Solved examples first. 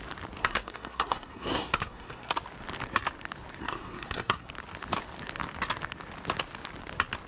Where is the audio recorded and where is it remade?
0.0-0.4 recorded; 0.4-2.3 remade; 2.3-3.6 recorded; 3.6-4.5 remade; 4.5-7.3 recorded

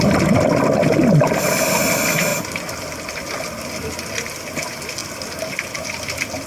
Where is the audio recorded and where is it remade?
0.0-6.5 recorded

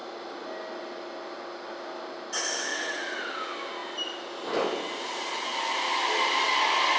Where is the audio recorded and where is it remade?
0.0-2.7 recorded; 2.7-3.4 remade; 3.4-7.0 recorded

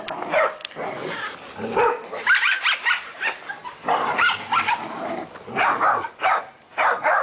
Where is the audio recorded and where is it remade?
0.0-7.2 recorded

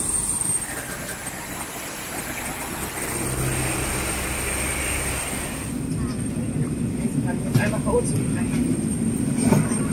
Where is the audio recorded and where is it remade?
0.0-9.9 recorded